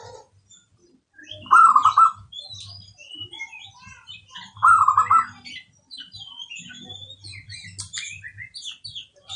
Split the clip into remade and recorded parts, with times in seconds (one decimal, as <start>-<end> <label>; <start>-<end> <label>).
0.0-9.4 recorded